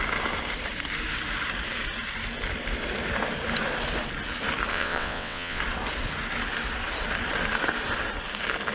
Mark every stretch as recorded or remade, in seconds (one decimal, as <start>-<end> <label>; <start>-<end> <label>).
0.0-4.7 recorded; 4.7-5.6 remade; 5.6-8.7 recorded